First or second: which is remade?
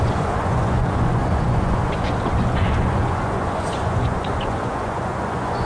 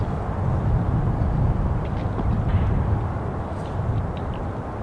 first